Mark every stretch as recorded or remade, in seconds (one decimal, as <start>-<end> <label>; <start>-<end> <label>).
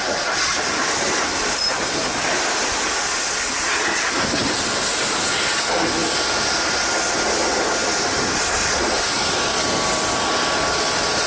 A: 0.0-11.3 recorded